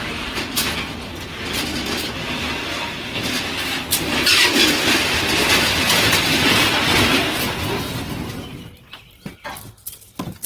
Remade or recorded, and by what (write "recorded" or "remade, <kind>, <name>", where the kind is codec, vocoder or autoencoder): recorded